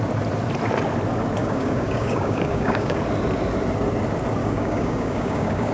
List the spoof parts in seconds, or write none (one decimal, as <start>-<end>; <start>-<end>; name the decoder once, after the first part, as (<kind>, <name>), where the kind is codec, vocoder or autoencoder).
1.4-3.0 (codec, DAC); 4.4-5.7